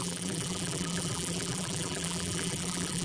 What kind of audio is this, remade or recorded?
remade